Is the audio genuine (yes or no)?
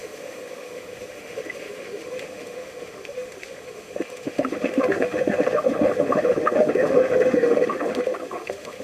no